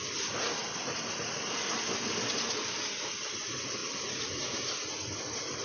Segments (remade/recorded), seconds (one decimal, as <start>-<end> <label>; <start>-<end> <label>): 0.0-5.6 recorded